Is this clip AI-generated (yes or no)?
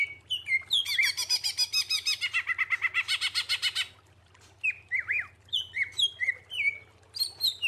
no